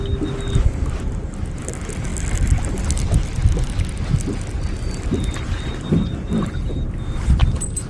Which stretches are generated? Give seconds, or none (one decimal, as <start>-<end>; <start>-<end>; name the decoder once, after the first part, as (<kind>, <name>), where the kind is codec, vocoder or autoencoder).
none